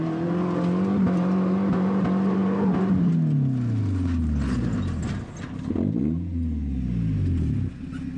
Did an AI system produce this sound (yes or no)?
no